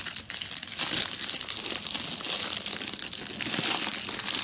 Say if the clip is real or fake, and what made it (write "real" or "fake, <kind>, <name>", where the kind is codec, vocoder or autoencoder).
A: real